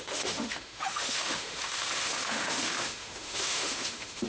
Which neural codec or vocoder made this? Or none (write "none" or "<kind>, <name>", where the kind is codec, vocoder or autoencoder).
autoencoder, DAC-VAE